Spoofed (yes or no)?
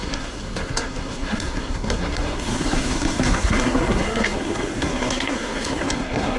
yes